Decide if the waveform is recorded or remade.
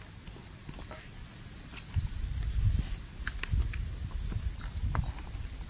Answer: recorded